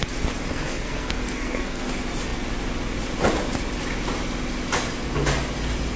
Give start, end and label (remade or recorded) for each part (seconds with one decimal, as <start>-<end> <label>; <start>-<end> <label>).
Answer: 0.0-0.5 recorded; 0.5-1.9 remade; 1.9-6.0 recorded